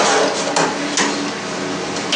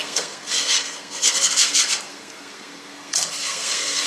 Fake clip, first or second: second